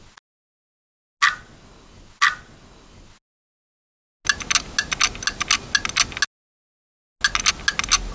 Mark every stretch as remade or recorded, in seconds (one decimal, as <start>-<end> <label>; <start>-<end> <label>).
0.0-8.1 recorded